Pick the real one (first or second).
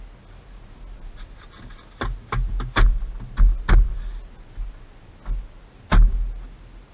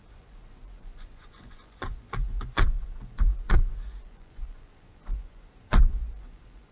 first